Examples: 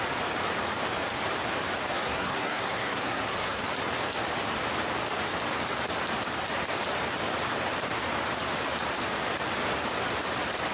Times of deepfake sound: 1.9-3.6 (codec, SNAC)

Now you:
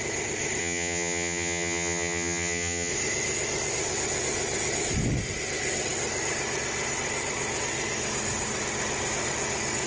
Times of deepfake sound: 0.6-2.9 (vocoder, HiFi-GAN)

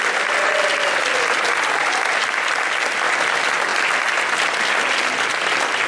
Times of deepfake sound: none